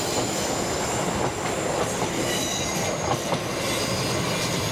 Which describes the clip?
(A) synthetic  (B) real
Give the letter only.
B